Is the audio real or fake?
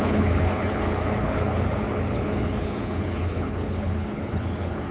fake